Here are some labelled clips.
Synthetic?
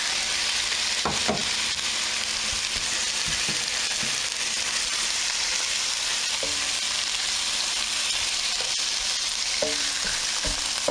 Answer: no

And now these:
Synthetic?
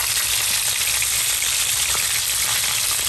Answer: no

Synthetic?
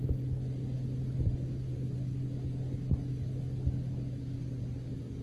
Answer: no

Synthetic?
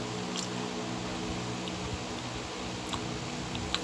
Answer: no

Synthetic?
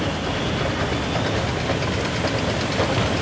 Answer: no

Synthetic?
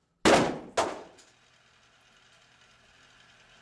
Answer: no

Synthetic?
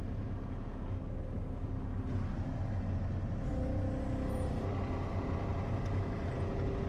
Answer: no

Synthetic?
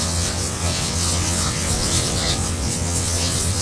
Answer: yes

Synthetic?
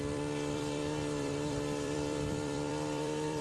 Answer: yes